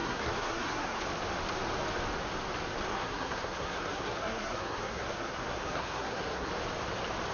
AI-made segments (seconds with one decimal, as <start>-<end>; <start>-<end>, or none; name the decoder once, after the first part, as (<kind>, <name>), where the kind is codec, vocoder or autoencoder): 0.0-1.0 (codec, SNAC); 2.9-6.5